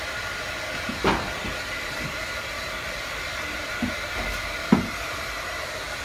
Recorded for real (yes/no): no